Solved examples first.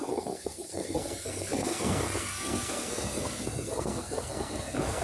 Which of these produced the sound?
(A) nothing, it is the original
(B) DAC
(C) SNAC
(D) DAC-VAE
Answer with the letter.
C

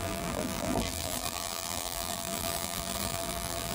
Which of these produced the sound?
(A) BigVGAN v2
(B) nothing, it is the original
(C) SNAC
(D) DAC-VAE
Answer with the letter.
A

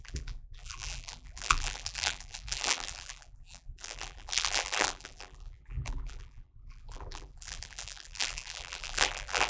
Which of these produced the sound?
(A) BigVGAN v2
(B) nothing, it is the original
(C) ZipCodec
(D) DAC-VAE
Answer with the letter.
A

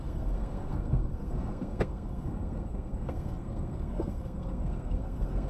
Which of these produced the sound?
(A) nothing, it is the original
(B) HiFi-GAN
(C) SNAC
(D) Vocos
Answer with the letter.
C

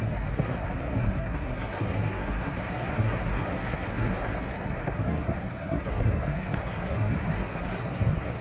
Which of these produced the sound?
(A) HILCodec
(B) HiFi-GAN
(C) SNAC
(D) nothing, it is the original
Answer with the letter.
C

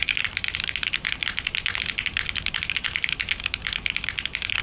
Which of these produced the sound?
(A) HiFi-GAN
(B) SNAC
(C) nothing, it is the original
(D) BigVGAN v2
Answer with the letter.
C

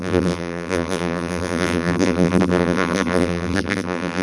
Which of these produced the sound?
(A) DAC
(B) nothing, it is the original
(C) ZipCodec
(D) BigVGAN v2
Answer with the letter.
D